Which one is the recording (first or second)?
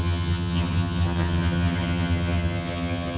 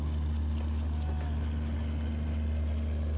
second